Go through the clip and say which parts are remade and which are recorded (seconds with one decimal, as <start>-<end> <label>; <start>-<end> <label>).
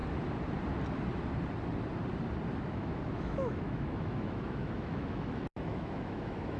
0.0-2.6 recorded; 2.6-6.6 remade